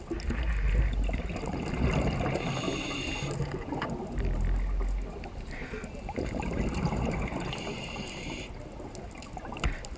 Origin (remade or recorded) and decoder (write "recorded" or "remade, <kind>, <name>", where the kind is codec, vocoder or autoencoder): recorded